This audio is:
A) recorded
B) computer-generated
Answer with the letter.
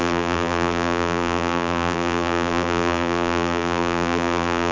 B